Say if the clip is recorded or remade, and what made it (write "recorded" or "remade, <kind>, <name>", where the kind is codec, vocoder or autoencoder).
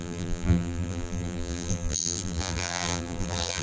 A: remade, vocoder, BigVGAN v2